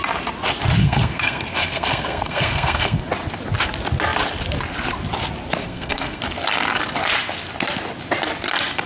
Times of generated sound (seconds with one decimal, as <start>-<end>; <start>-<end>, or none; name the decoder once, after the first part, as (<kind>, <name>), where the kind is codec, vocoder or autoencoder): 0.8-3.0 (codec, SNAC); 5.6-6.2